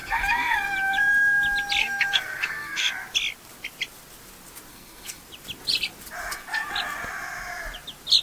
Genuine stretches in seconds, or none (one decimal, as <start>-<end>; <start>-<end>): 0.6-1.8; 2.9-4.7; 5.2-8.2